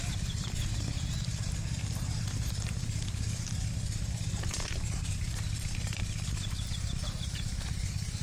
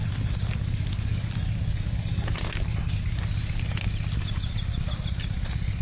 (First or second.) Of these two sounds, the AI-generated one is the first